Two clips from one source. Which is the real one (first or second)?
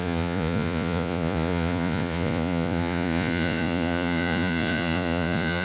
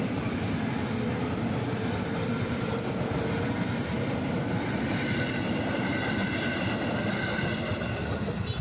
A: second